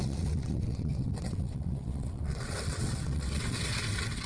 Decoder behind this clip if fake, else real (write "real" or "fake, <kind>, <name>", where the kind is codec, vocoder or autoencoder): fake, vocoder, WaveNeXt